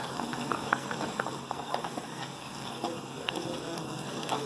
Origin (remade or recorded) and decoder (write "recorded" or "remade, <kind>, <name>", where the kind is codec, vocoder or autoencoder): remade, codec, SNAC